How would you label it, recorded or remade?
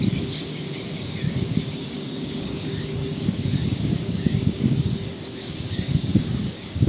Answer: remade